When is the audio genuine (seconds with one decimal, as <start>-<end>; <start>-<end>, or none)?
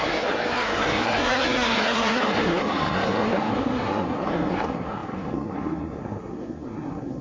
none